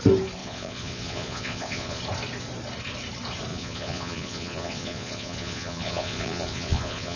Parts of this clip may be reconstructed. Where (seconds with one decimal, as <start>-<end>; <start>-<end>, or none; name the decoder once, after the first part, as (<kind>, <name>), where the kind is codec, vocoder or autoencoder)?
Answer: 0.4-2.0 (vocoder, Vocos); 3.5-7.2